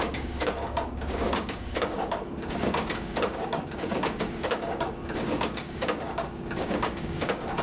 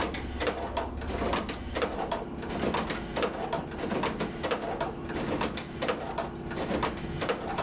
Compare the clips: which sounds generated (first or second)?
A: first